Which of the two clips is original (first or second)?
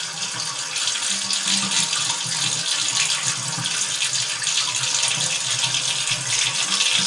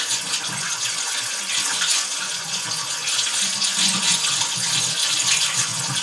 first